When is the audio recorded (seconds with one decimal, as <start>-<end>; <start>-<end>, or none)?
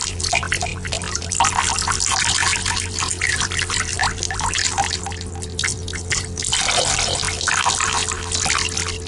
0.0-9.1